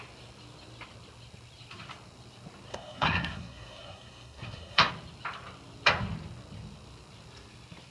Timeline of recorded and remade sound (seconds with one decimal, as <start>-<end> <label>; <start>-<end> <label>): 0.0-2.7 recorded; 2.7-4.9 remade; 4.9-7.9 recorded